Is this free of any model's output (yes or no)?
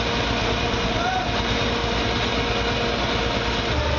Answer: yes